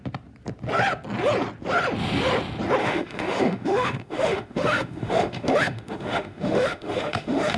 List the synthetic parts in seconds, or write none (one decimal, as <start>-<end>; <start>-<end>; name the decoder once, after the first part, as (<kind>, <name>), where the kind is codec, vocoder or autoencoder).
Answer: 2.8-7.6 (autoencoder, DAC-VAE)